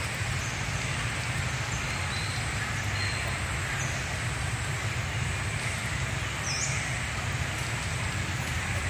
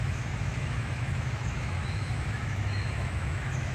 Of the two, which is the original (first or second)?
first